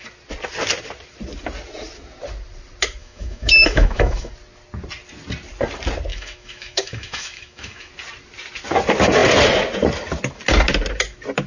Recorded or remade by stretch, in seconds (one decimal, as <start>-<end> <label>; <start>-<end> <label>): 0.0-3.0 recorded; 3.0-4.3 remade; 4.3-6.1 recorded; 6.1-7.9 remade; 7.9-11.5 recorded

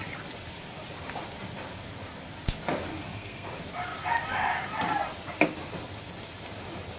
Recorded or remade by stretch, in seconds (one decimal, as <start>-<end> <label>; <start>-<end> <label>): 0.0-3.0 recorded; 3.0-3.5 remade; 3.5-7.0 recorded

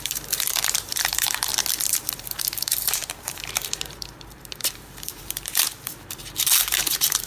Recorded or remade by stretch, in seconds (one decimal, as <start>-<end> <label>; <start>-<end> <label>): 0.0-1.5 remade; 1.5-2.2 recorded; 2.2-7.3 remade

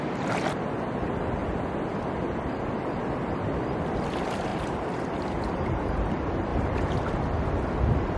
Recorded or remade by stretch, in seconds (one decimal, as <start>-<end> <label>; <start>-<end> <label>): 0.0-4.5 recorded; 4.5-6.1 remade; 6.1-6.5 recorded; 6.5-7.1 remade; 7.1-8.2 recorded

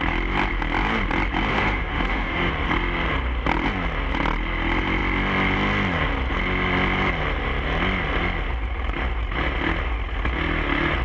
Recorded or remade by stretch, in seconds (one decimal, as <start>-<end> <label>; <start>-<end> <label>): 0.0-1.5 recorded; 1.5-2.5 remade; 2.5-11.0 recorded

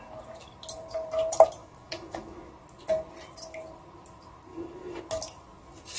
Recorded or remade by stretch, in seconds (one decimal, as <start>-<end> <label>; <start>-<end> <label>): 0.0-1.6 recorded; 1.6-2.5 remade; 2.5-4.5 recorded; 4.5-5.0 remade; 5.0-6.0 recorded

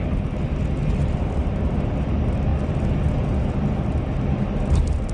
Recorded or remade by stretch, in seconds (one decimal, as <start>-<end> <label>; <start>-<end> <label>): 0.0-5.1 recorded